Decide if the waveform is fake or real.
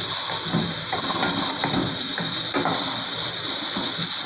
fake